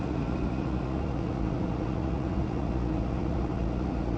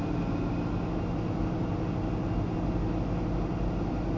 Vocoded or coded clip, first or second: first